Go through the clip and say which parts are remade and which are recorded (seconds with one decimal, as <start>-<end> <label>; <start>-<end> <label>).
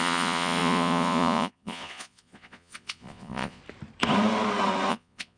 0.0-3.6 remade; 3.6-4.9 recorded; 4.9-5.4 remade